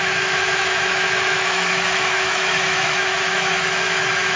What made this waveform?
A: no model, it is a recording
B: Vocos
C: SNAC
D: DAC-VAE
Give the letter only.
D